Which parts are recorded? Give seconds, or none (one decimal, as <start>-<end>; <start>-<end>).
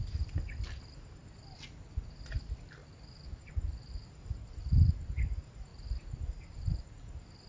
0.0-7.5